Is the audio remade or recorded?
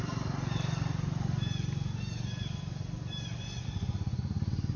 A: recorded